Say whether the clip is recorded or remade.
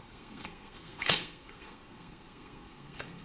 remade